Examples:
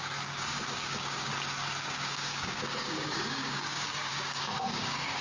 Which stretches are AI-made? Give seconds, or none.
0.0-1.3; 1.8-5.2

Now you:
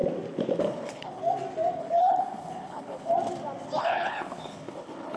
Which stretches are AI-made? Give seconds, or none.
0.6-1.2; 1.8-3.1; 3.8-5.2

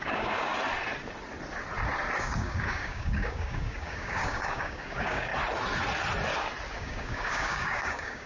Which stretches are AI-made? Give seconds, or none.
0.0-0.5; 2.2-5.3; 6.7-8.3